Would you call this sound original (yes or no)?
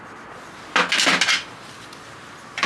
yes